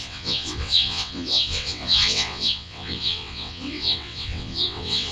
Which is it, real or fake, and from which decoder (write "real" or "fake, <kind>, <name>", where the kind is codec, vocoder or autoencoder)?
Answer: fake, vocoder, WaveNeXt